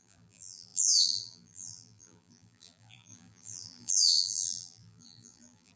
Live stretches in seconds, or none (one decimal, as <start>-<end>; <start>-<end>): none